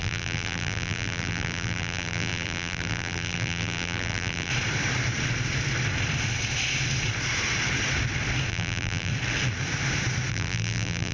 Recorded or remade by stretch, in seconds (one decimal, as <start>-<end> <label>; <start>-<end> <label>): 0.0-4.5 remade; 4.5-8.5 recorded; 8.5-9.1 remade; 9.1-10.3 recorded; 10.3-11.1 remade